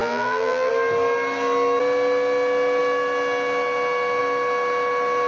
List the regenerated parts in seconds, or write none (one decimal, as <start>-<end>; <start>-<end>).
0.0-0.7